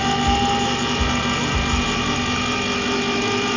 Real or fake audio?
real